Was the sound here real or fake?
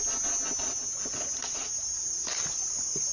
real